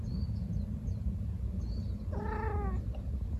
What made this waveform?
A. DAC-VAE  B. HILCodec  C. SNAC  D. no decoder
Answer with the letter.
D